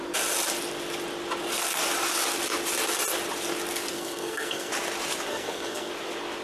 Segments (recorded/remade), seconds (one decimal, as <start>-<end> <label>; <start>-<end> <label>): 0.0-3.9 recorded; 3.9-4.7 remade; 4.7-5.3 recorded; 5.3-5.9 remade; 5.9-6.4 recorded